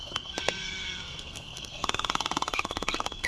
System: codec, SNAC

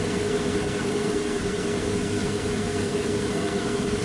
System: codec, SNAC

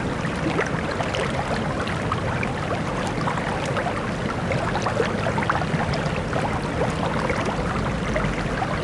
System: none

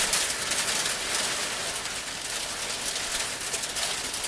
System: none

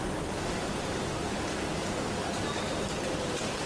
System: none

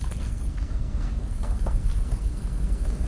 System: codec, SNAC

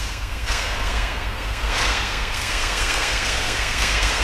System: codec, SNAC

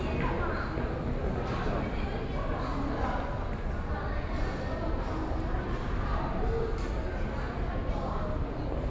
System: none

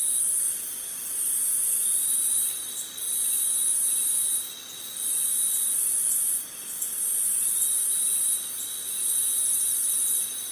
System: none